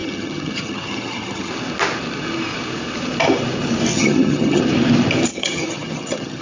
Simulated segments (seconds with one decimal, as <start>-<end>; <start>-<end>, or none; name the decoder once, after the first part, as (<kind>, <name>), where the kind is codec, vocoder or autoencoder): 0.0-1.5 (vocoder, HiFi-GAN); 3.9-4.6; 5.3-6.4